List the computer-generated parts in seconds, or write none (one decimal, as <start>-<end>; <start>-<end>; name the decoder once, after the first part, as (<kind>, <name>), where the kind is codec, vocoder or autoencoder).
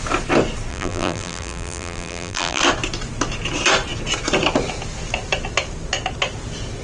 0.7-2.6 (vocoder, BigVGAN v2)